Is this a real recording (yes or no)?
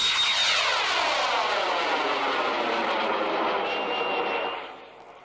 yes